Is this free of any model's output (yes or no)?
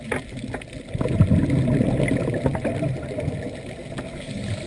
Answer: yes